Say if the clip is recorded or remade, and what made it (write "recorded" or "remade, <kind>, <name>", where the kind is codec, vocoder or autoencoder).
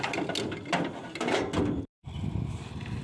recorded